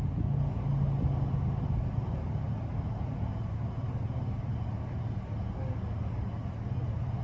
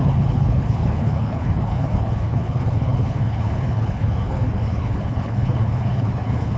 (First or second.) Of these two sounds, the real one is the first